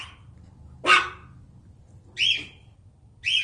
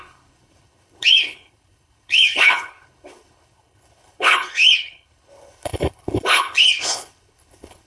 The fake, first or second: second